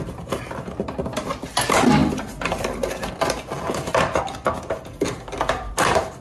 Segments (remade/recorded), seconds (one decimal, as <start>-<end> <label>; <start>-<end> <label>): 0.0-6.2 recorded